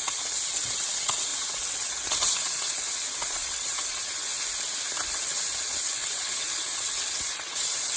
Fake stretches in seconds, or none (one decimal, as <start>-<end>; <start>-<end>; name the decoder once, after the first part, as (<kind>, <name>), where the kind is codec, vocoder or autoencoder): 0.0-4.3 (vocoder, WaveNeXt); 5.1-8.0